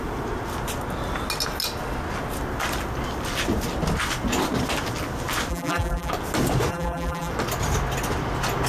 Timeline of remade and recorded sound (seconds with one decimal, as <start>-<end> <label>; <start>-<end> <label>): 0.0-5.5 recorded; 5.5-6.1 remade; 6.1-6.7 recorded; 6.7-7.3 remade; 7.3-8.7 recorded